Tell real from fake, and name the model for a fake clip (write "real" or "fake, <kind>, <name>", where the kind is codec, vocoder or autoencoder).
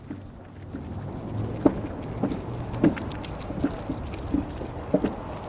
real